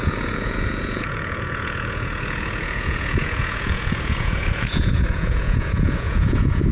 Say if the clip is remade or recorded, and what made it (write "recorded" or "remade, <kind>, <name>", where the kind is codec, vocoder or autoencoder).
remade, vocoder, Vocos